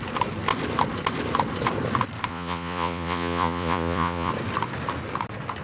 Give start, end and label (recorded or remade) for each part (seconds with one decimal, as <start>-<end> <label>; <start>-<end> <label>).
0.0-2.3 recorded; 2.3-4.3 remade; 4.3-5.6 recorded